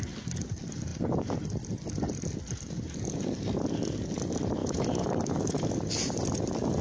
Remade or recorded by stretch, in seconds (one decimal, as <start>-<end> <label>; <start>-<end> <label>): 0.0-4.6 recorded; 4.6-5.7 remade; 5.7-6.8 recorded